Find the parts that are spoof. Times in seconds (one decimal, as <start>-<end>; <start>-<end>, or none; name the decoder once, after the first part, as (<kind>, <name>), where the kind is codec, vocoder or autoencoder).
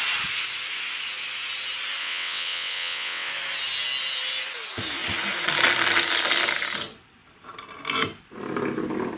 2.0-3.3 (vocoder, WaveNeXt)